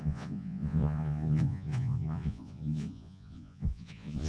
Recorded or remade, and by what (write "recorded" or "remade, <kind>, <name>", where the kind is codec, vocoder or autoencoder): remade, vocoder, Vocos